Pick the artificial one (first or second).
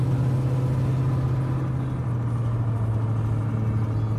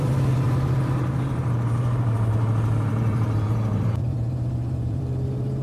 second